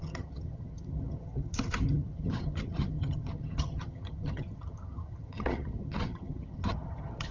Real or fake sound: fake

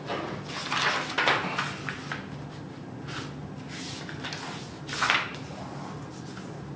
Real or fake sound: real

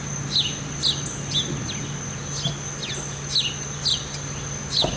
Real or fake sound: real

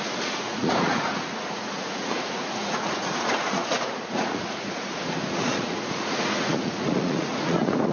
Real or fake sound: fake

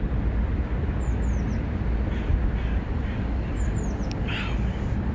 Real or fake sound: real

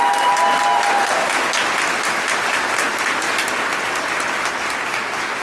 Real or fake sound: real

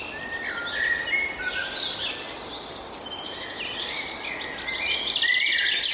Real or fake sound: real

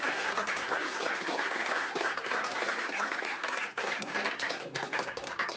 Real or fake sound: fake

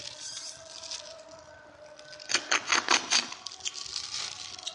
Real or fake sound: real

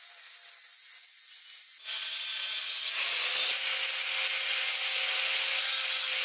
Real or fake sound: real